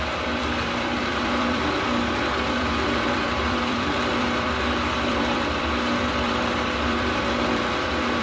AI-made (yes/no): yes